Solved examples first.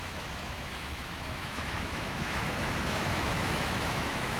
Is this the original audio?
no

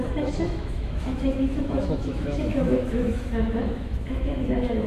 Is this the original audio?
no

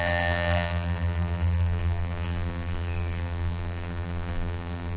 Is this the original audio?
no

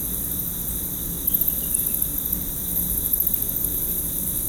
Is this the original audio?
yes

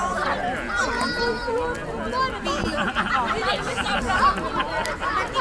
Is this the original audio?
yes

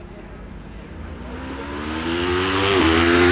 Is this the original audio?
yes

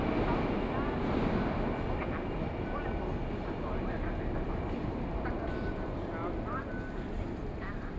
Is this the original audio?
yes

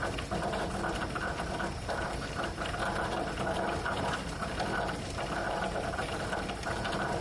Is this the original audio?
yes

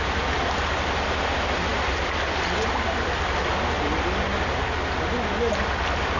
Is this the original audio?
yes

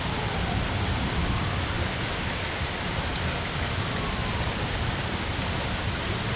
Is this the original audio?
yes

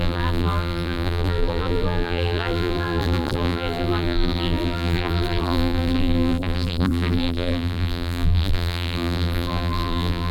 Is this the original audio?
no